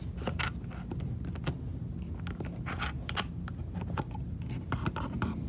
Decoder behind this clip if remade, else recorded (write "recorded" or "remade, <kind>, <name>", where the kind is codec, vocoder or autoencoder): recorded